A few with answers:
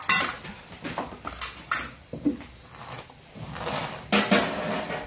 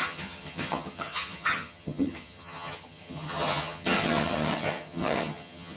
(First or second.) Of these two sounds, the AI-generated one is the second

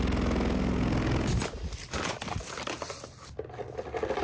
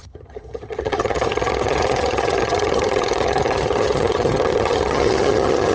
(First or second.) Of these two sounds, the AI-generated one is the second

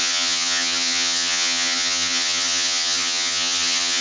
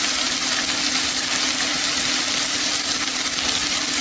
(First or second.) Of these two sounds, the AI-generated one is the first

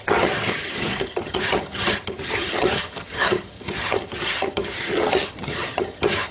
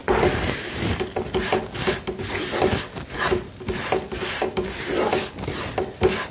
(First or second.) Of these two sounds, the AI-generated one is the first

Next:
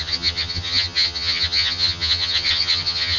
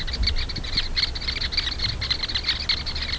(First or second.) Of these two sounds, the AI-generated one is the first